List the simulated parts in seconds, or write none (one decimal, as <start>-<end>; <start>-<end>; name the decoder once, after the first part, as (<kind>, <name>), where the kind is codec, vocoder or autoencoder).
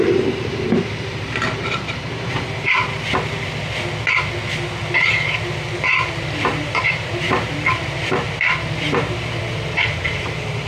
0.0-2.8 (vocoder, BigVGAN v2); 6.2-10.7